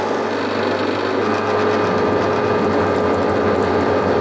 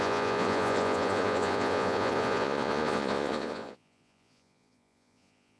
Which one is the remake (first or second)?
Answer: second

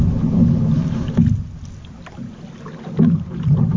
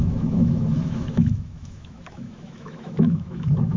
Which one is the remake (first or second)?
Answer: second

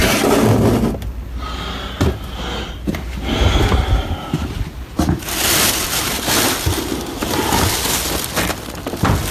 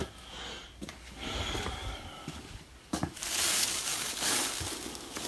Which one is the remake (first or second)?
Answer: second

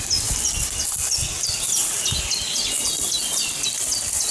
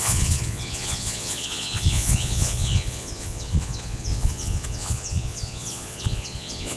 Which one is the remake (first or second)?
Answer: second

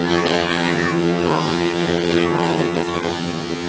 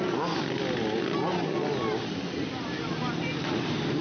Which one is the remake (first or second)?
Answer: first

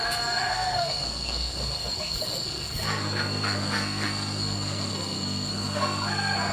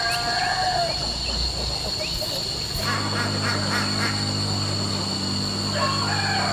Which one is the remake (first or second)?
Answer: first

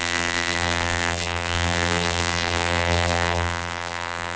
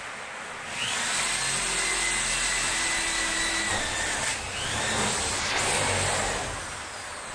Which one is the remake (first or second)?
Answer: first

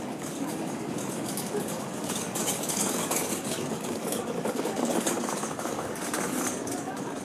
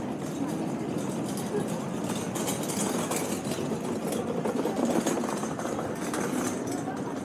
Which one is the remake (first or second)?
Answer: first